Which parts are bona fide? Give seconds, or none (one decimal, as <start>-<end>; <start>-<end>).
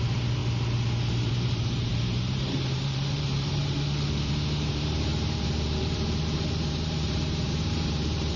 0.4-1.3; 3.6-4.7